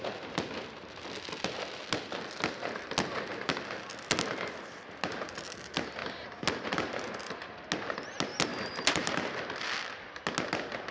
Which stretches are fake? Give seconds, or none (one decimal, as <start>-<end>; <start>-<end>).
none